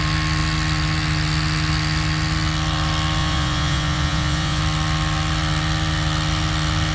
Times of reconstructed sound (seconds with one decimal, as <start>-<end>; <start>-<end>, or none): 3.2-4.6

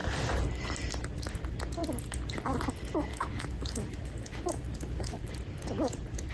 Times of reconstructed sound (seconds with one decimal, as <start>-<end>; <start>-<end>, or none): 3.1-5.3

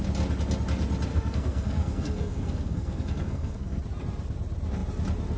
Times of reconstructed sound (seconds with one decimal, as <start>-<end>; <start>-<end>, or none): 1.1-3.8

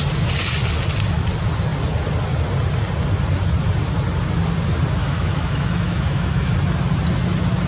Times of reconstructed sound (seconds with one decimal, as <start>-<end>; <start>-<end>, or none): 5.0-6.5

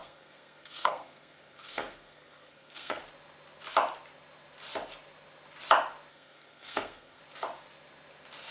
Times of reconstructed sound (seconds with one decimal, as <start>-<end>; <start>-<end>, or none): 0.0-3.0; 6.1-7.2

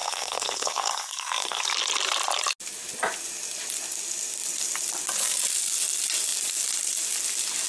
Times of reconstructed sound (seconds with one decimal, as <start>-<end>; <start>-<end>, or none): 0.0-1.6